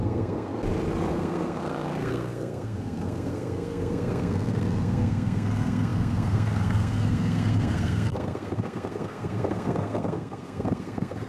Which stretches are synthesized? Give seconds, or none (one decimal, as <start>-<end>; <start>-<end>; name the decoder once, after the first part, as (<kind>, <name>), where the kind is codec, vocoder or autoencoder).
0.0-0.5 (codec, SNAC); 1.1-11.3